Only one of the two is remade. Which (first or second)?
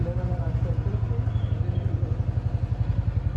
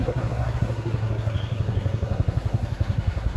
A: second